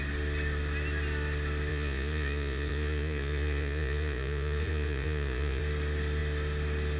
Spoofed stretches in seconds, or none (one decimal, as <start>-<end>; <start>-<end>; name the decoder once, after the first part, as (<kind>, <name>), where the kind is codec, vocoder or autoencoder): 1.7-5.6 (vocoder, Vocos)